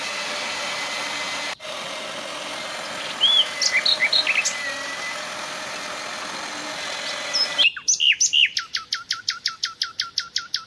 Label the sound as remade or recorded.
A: recorded